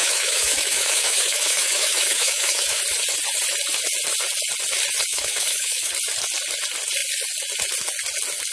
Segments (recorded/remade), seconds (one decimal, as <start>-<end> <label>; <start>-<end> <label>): 0.0-2.8 remade; 2.8-5.1 recorded; 5.1-5.9 remade; 5.9-8.5 recorded